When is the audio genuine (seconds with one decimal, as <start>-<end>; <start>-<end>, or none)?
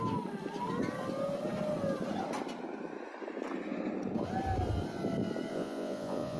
0.0-5.5